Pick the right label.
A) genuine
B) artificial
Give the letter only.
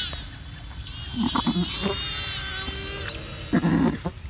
A